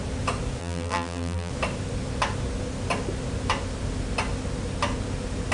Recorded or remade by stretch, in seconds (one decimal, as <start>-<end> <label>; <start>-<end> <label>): 0.0-0.6 recorded; 0.6-1.5 remade; 1.5-5.5 recorded